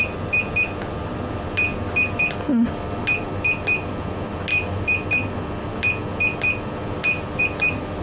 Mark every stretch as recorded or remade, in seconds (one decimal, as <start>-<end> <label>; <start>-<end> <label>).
0.0-8.0 recorded